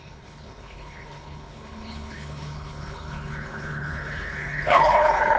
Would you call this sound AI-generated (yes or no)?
yes